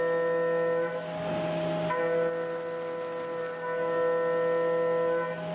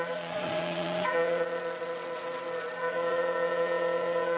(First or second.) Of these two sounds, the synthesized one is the second